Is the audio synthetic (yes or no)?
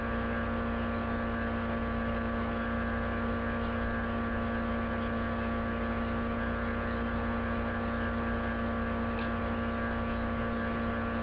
no